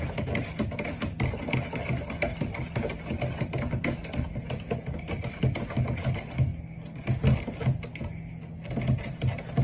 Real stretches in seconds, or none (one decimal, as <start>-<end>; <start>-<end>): 0.0-9.6

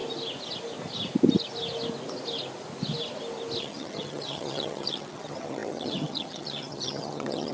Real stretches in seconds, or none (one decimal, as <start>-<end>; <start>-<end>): 0.0-3.6

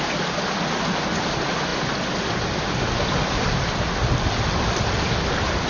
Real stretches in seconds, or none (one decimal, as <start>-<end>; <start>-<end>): 0.0-5.7

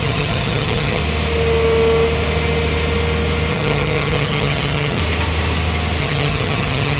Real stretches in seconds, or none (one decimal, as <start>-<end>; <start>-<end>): 1.0-3.5; 5.0-6.0

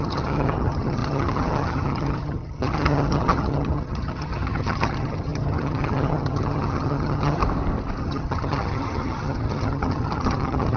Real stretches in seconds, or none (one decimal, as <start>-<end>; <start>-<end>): 7.4-8.0